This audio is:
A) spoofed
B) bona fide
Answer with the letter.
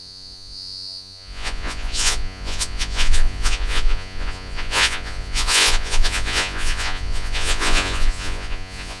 A